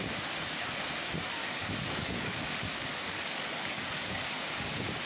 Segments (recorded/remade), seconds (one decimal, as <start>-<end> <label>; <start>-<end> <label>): 0.0-1.4 recorded; 1.4-4.3 remade; 4.3-5.1 recorded